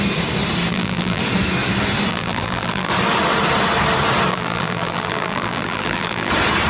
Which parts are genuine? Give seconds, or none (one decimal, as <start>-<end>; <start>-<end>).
0.0-0.7; 1.2-2.1; 2.9-4.3; 6.3-6.7

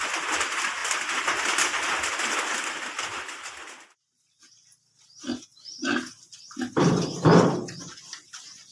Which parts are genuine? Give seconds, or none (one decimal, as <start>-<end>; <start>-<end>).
0.0-8.7

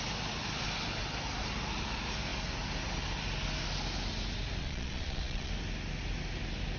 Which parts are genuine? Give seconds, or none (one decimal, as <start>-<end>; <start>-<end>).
0.0-4.6; 5.5-6.8

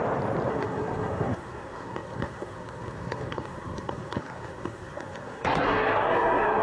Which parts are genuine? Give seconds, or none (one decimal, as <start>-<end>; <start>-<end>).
0.0-0.5